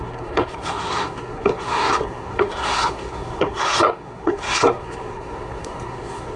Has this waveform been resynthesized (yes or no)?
yes